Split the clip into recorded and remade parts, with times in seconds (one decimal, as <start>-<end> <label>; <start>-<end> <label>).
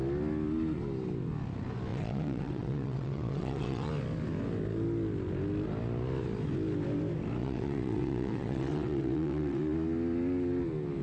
0.0-1.9 recorded; 1.9-3.9 remade; 3.9-7.4 recorded; 7.4-9.6 remade; 9.6-11.0 recorded